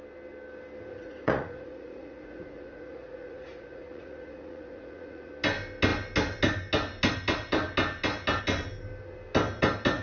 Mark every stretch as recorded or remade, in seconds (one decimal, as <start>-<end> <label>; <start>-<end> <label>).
0.0-0.9 recorded; 0.9-5.3 remade; 5.3-10.0 recorded